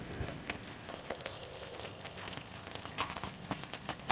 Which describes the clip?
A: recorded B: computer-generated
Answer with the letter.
B